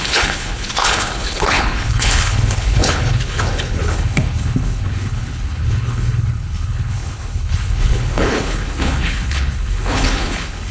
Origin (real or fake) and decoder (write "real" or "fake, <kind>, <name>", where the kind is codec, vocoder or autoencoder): fake, codec, HILCodec